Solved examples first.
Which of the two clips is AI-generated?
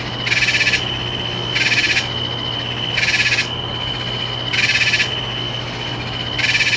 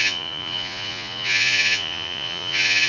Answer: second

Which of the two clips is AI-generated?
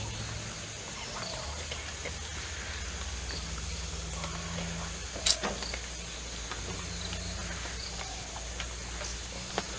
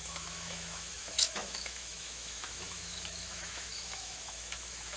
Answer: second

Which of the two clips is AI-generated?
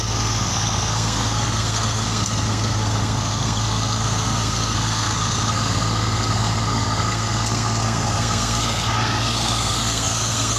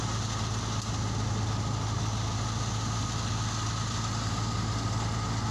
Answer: first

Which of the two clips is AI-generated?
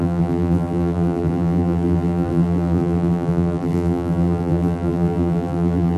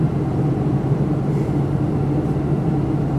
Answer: first